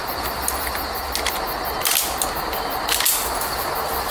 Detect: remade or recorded recorded